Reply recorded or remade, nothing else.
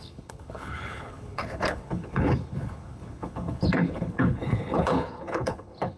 remade